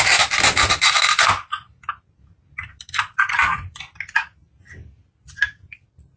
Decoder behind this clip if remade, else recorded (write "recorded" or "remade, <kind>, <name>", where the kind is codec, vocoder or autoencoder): recorded